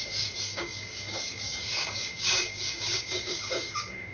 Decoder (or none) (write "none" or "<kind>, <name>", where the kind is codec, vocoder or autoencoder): codec, DAC